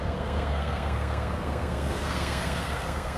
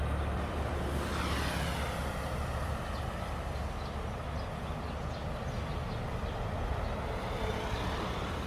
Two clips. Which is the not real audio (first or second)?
first